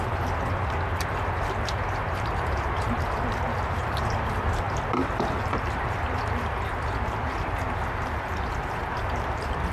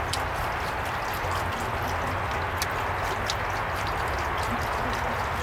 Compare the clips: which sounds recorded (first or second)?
second